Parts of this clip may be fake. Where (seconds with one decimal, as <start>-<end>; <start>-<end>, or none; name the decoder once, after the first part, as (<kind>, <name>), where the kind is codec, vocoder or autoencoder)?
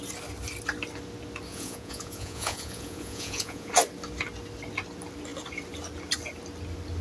1.5-3.7 (vocoder, Vocos)